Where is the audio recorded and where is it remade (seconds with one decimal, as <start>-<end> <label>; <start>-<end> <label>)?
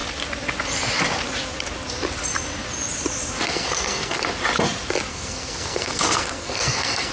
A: 0.0-3.5 recorded; 3.5-4.2 remade; 4.2-5.1 recorded; 5.1-7.1 remade